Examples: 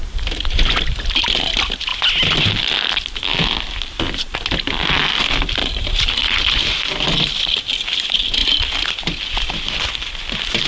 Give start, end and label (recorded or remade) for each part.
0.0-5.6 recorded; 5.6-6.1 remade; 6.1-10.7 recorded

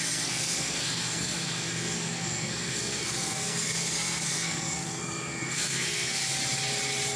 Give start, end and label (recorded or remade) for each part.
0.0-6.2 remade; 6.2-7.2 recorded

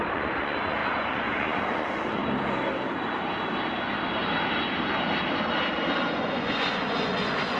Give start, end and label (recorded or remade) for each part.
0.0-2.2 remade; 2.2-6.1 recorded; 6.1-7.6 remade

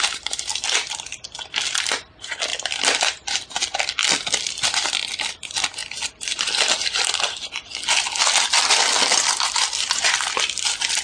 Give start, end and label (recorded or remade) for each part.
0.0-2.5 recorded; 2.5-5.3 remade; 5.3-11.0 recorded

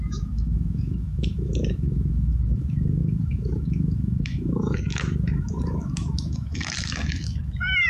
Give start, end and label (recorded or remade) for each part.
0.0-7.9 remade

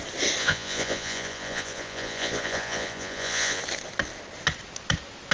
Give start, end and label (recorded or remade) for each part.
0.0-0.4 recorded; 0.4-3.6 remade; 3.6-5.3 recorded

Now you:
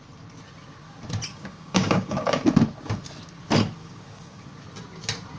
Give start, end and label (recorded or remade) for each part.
0.0-1.3 recorded; 1.3-2.4 remade; 2.4-3.8 recorded; 3.8-4.4 remade; 4.4-5.4 recorded